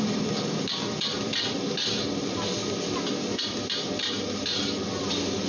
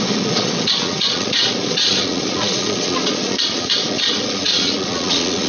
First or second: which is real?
first